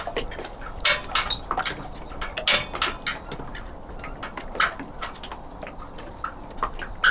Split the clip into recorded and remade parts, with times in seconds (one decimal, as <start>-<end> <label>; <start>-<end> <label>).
0.0-7.1 recorded